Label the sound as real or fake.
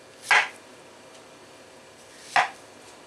real